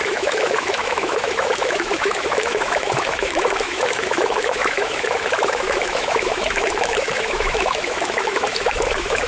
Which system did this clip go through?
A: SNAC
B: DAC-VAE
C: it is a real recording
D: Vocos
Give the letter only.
B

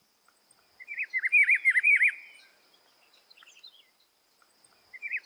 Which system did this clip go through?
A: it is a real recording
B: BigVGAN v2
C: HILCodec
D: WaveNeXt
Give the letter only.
A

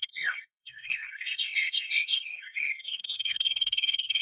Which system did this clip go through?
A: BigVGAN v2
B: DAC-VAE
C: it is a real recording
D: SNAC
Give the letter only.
D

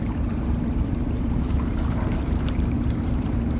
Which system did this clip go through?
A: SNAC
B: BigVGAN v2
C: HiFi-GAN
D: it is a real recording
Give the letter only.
B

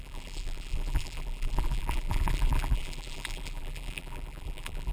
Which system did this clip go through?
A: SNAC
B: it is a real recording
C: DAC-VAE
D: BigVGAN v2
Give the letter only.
D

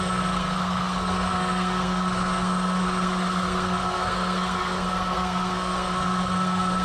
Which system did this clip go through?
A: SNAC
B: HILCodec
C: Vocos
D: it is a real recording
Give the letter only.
A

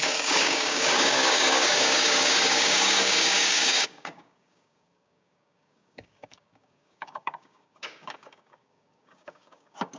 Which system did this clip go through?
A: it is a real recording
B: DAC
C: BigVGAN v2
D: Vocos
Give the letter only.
B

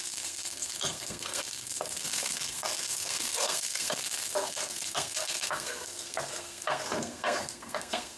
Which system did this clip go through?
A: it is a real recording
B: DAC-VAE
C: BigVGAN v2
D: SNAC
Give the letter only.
D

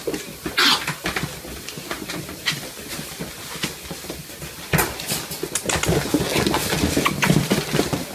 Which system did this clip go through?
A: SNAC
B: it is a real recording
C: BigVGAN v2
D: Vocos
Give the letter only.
B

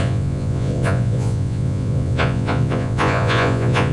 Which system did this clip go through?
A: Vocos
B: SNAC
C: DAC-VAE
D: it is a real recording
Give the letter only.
A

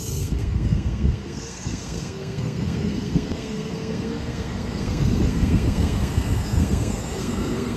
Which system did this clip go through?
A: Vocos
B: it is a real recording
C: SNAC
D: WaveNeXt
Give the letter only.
C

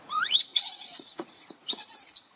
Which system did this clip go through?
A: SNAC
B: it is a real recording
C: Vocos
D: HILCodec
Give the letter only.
C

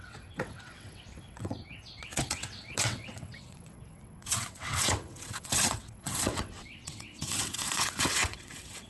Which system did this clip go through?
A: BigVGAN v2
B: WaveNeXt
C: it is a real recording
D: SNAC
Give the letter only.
B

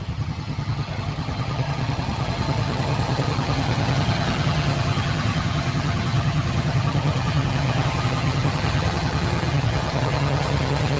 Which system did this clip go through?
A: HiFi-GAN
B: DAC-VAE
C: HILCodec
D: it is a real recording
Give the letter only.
A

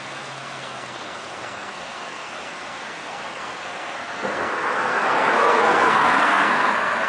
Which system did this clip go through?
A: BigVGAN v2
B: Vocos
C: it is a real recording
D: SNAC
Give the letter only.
D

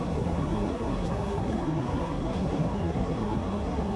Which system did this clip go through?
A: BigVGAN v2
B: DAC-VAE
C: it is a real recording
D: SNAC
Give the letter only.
D